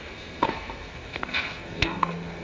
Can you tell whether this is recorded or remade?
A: remade